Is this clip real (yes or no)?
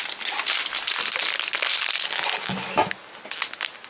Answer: yes